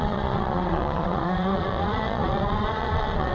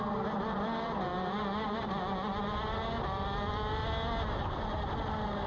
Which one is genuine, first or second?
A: second